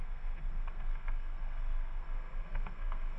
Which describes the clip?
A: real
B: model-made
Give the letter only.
B